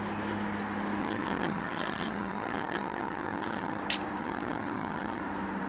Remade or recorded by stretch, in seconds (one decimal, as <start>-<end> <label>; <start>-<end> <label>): 0.0-1.0 recorded; 1.0-3.8 remade; 3.8-4.2 recorded; 4.2-5.2 remade; 5.2-5.7 recorded